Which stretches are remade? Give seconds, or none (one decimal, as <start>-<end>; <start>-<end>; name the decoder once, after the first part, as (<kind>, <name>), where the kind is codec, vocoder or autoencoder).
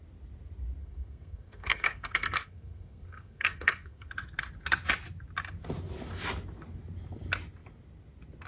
0.8-4.1 (codec, SNAC)